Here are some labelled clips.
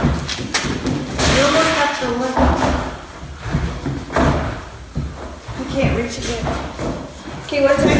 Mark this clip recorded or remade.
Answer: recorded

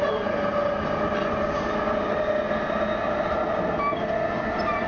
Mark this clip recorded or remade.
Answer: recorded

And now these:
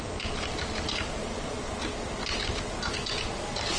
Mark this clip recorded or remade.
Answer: recorded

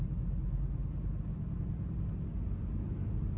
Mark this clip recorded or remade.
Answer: recorded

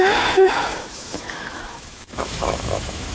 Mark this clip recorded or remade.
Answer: remade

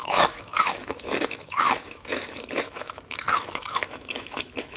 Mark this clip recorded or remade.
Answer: remade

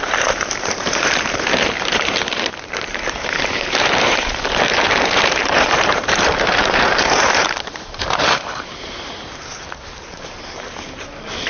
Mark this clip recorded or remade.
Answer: remade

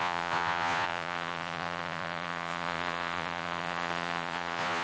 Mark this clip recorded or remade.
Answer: remade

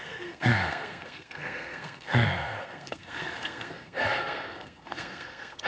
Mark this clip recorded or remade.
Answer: remade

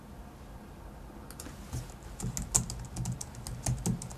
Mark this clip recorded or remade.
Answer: recorded